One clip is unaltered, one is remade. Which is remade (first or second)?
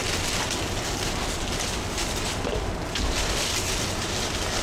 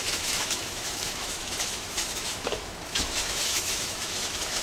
second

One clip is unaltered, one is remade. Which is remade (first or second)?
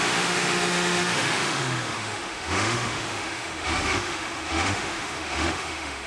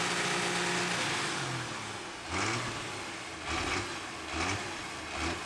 first